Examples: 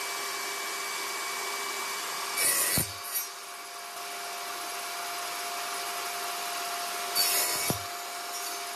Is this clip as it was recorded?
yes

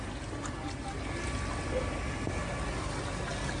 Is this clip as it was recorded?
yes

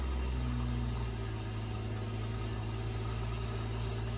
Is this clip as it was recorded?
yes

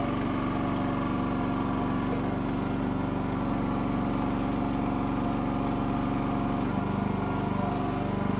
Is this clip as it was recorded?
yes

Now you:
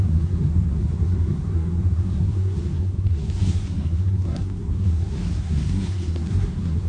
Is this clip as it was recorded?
no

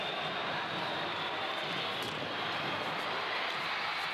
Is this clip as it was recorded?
yes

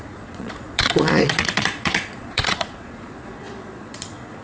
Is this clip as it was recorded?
no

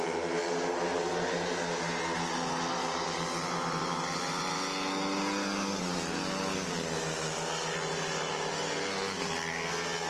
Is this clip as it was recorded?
yes